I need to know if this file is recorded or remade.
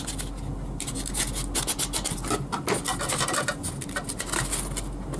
recorded